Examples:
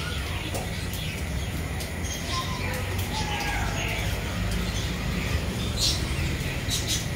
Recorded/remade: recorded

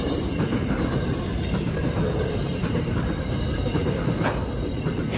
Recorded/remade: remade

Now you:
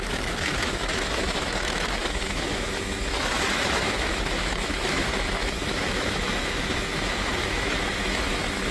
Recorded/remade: remade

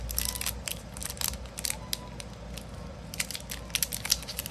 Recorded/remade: recorded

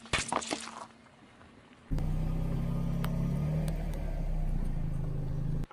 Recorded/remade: recorded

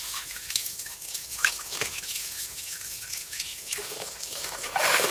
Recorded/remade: remade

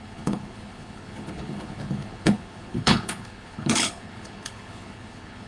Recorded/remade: remade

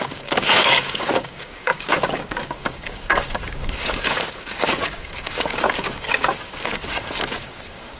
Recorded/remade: remade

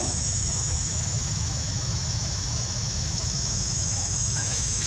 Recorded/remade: remade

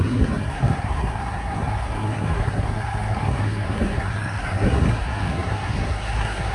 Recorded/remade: remade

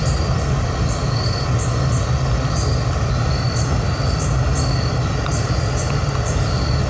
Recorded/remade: recorded